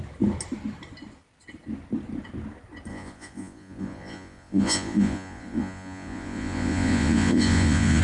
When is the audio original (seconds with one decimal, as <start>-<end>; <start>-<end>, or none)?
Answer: 0.0-2.9